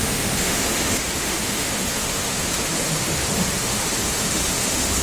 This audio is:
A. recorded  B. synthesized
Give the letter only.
B